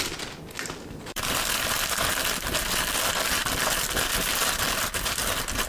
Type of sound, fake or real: fake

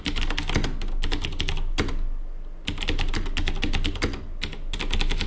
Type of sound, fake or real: real